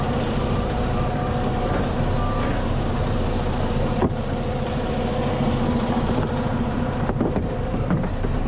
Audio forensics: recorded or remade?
remade